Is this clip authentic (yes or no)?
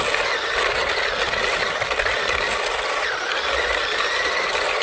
yes